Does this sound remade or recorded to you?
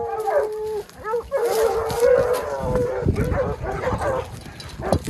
recorded